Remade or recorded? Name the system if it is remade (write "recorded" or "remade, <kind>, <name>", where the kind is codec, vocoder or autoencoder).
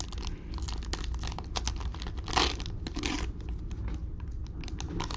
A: recorded